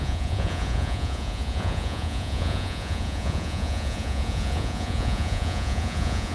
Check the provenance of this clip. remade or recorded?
remade